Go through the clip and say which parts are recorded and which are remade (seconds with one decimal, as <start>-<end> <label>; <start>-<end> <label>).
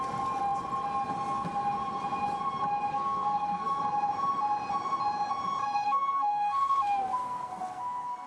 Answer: 0.0-2.9 recorded; 2.9-3.8 remade; 3.8-5.6 recorded; 5.6-8.3 remade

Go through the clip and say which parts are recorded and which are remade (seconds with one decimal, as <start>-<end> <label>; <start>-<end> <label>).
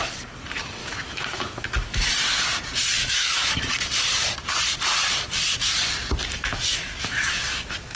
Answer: 0.0-0.8 recorded; 0.8-2.1 remade; 2.1-3.0 recorded; 3.0-3.6 remade; 3.6-6.5 recorded; 6.5-8.0 remade